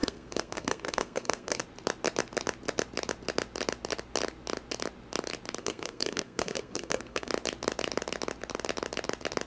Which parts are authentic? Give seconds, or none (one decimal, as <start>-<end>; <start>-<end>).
1.6-5.6; 7.3-9.5